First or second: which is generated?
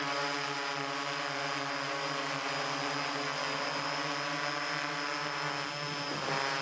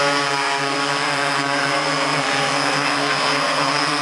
second